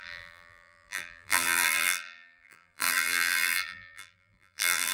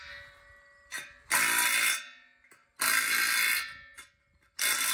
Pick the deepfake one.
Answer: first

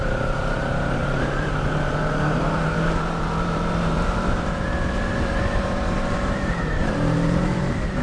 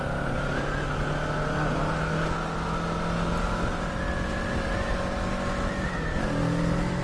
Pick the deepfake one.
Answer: first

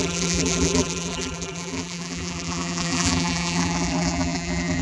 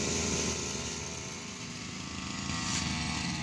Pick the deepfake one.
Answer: first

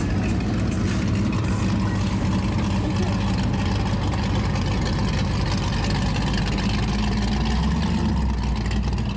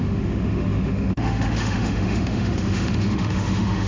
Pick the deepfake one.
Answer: second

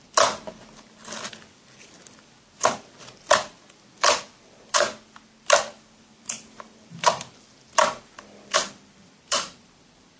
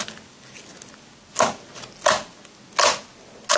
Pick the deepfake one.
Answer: first